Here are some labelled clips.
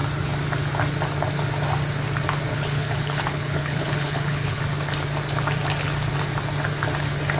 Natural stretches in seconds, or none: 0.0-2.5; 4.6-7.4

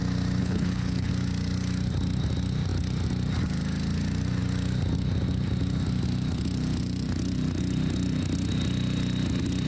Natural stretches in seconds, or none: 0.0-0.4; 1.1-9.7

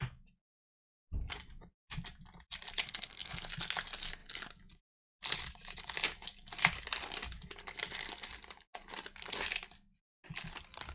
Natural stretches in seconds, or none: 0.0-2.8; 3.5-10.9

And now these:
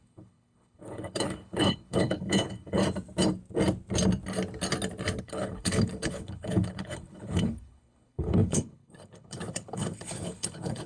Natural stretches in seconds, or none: 2.8-5.2

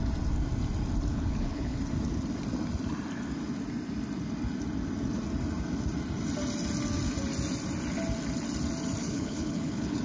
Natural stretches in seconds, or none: 0.0-1.1; 1.8-9.0